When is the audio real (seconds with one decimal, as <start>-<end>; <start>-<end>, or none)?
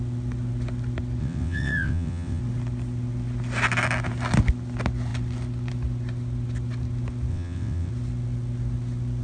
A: 0.0-1.2; 2.4-7.3; 7.9-9.2